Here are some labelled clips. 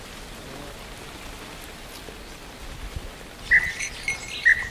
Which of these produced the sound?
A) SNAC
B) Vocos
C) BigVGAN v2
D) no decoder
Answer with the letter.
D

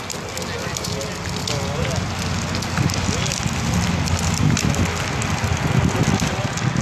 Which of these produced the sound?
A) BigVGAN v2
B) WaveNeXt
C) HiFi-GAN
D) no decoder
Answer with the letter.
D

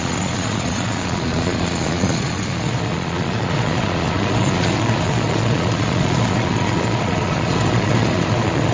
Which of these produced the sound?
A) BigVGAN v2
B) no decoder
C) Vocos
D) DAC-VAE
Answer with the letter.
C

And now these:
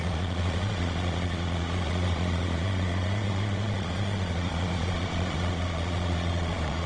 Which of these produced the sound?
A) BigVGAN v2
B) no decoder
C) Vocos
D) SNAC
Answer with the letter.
C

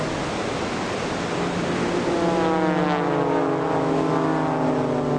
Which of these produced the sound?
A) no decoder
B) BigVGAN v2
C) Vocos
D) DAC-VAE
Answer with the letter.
A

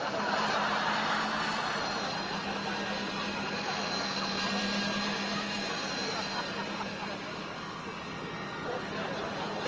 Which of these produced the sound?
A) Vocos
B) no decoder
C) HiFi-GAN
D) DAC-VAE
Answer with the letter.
B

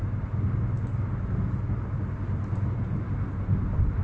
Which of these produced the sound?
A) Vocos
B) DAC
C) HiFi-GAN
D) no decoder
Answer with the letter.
D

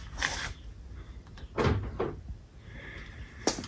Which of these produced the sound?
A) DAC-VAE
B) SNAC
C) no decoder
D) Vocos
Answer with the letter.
C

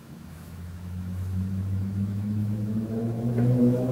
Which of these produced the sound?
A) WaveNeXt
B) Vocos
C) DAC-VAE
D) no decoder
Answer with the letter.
C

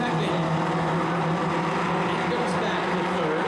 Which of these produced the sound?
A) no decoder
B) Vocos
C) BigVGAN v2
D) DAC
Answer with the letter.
A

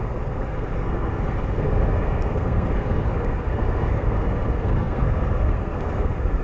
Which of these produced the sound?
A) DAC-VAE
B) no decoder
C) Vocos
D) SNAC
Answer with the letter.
D